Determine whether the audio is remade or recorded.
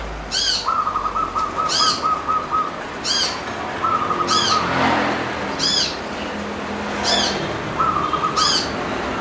recorded